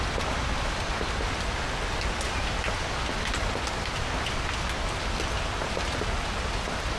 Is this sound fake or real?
real